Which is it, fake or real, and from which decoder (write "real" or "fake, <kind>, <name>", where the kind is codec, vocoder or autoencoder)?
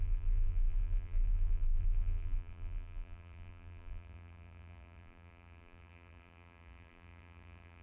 fake, vocoder, BigVGAN v2